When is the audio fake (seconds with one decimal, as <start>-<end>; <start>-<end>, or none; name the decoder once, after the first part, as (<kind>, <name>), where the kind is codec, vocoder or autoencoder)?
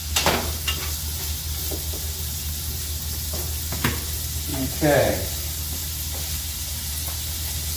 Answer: 4.5-5.3 (vocoder, BigVGAN v2)